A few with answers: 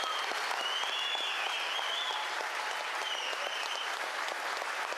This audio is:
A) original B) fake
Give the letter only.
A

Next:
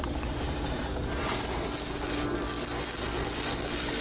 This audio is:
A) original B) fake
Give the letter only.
A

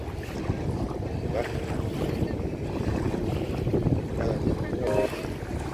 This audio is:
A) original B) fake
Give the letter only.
A